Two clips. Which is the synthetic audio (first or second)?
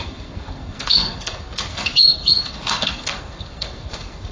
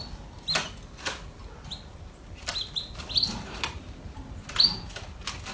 first